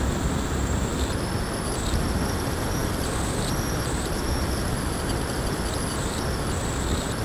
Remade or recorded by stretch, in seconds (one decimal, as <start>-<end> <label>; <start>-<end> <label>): 0.0-7.2 recorded